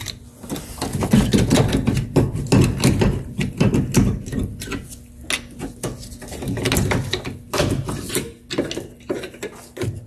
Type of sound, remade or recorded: recorded